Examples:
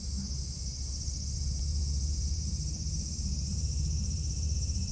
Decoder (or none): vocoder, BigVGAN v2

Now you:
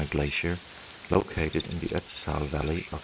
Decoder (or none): none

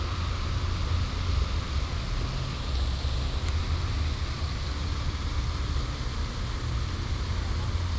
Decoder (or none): none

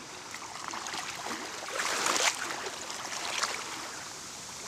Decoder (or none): none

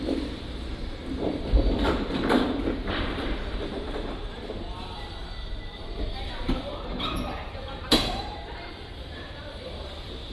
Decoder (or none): vocoder, BigVGAN v2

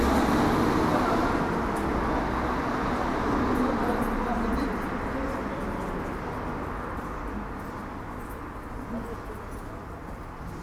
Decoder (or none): none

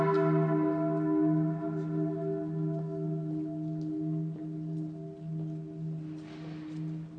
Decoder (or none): none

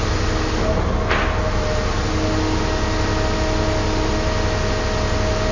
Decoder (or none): none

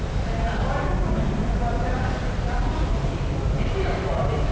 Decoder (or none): vocoder, BigVGAN v2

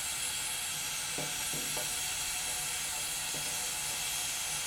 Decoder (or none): none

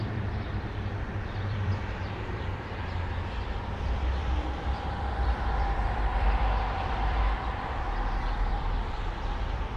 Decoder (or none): vocoder, BigVGAN v2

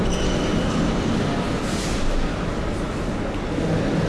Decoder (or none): none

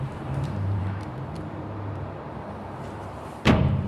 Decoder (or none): vocoder, BigVGAN v2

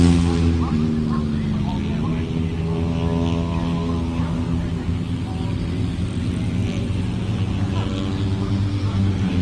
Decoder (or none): none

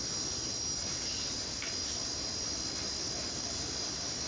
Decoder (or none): vocoder, BigVGAN v2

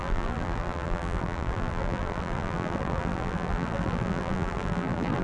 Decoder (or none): vocoder, BigVGAN v2